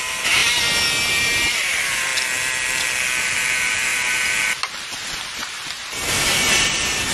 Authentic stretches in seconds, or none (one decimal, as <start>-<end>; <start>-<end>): 0.4-1.1; 2.1-3.2